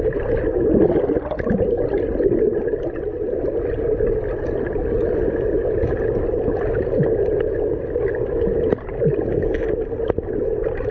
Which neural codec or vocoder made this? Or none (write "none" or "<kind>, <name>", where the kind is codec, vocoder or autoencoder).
none